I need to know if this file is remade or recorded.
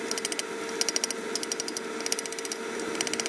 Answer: recorded